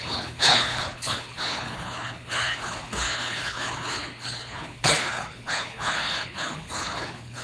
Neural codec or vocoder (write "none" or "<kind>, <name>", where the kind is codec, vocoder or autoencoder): codec, HILCodec